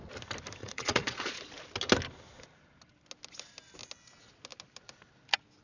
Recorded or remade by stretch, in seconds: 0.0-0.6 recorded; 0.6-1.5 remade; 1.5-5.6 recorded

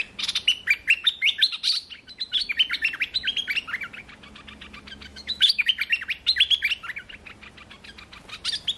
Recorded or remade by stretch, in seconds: 0.0-5.1 recorded; 5.1-5.7 remade; 5.7-8.8 recorded

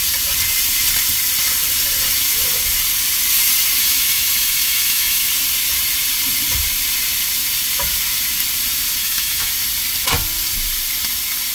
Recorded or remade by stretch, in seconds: 0.0-3.8 recorded; 3.8-5.3 remade; 5.3-9.0 recorded; 9.0-9.5 remade; 9.5-11.5 recorded

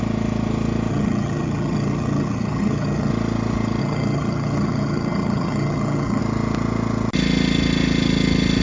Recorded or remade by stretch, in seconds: 0.0-0.9 recorded; 0.9-3.1 remade; 3.1-3.8 recorded; 3.8-6.2 remade; 6.2-8.6 recorded

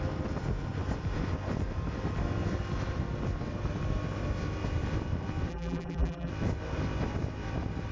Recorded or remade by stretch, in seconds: 0.0-5.5 recorded; 5.5-6.3 remade; 6.3-7.9 recorded

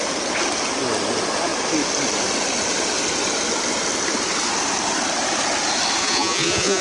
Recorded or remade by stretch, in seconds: 0.0-6.0 recorded; 6.0-6.8 remade

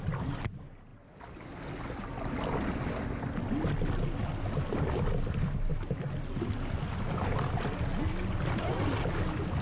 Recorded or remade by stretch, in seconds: 0.0-9.6 recorded